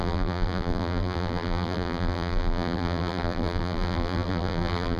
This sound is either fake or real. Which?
fake